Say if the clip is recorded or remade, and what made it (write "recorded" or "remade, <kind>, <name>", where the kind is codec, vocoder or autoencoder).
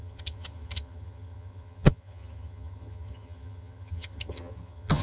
remade, vocoder, HiFi-GAN